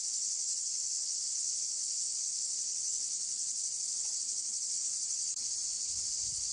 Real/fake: fake